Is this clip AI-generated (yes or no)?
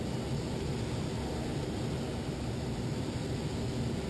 no